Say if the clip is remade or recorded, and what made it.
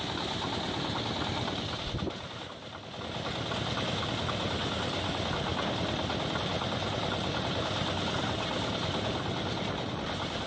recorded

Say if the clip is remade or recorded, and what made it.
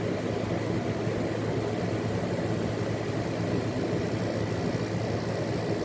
recorded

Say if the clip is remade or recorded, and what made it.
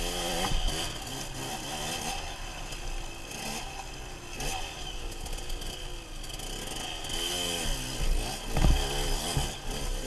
recorded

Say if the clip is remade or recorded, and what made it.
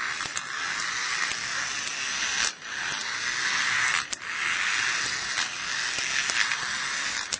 recorded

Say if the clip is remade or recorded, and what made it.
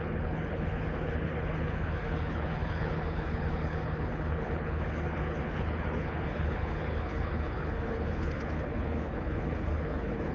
remade, codec, HILCodec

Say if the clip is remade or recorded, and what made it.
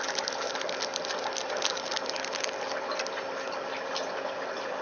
recorded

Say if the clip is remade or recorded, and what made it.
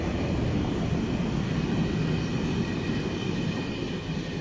recorded